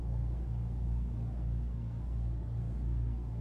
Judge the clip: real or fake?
fake